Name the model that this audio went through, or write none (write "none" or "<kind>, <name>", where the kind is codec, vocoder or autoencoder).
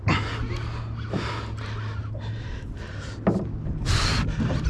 none